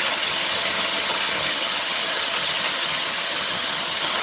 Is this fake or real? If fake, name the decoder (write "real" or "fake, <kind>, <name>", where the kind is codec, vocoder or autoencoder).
fake, vocoder, HiFi-GAN